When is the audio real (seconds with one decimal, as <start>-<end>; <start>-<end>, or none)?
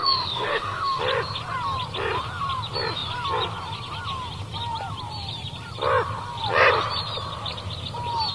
1.0-8.3